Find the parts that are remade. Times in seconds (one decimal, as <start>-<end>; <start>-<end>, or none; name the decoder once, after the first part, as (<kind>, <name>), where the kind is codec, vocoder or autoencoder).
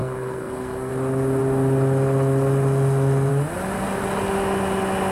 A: 0.0-0.9 (codec, SNAC)